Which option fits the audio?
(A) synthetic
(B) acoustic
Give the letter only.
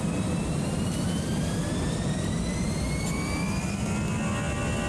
B